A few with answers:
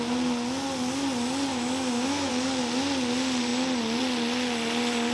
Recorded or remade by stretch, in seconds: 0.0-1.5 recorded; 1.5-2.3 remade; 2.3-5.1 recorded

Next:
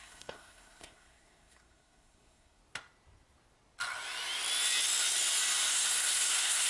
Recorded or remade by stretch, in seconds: 0.0-2.6 remade; 2.6-5.7 recorded; 5.7-6.7 remade